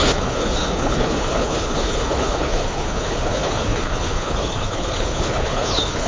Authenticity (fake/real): fake